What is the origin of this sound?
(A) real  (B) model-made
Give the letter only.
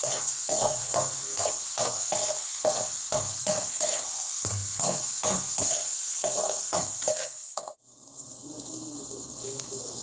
B